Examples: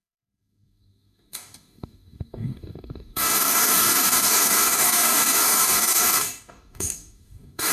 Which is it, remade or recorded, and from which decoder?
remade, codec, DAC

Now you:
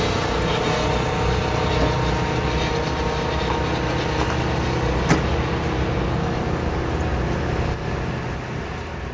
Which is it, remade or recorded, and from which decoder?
recorded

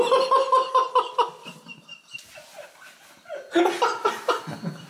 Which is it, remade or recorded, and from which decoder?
recorded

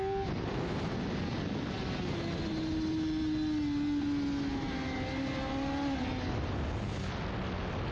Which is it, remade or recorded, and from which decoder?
recorded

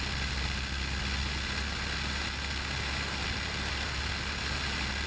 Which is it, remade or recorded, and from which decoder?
recorded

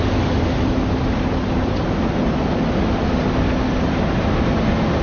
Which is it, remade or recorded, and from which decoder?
recorded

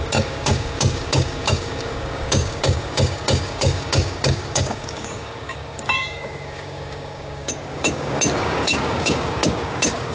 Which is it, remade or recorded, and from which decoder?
remade, codec, DAC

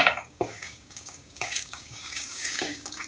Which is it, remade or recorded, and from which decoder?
remade, codec, DAC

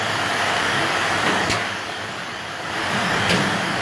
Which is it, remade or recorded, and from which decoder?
remade, codec, DAC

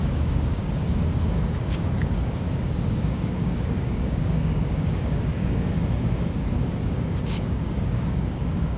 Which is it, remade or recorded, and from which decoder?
remade, codec, DAC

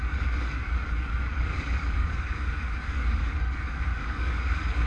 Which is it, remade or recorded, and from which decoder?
remade, codec, DAC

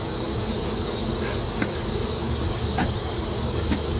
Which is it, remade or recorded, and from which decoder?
remade, codec, DAC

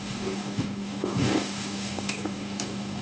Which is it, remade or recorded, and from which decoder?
remade, codec, DAC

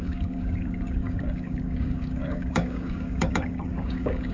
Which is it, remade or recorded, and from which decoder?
remade, codec, DAC